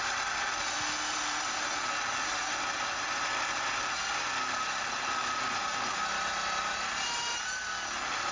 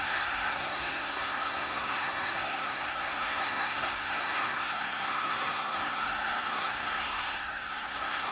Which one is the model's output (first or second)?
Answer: second